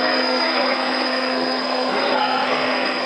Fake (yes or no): yes